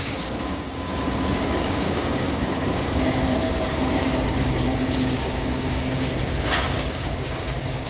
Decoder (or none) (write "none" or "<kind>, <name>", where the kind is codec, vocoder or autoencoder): codec, DAC